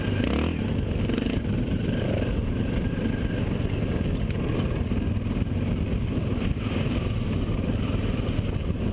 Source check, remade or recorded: recorded